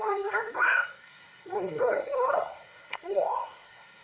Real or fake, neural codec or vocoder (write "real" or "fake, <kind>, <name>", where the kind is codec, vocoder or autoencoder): fake, codec, SNAC